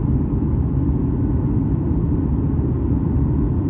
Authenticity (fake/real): real